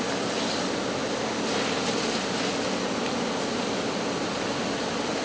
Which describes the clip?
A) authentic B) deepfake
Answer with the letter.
A